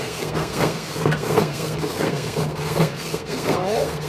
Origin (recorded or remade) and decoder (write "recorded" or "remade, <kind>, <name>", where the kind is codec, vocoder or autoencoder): remade, codec, SNAC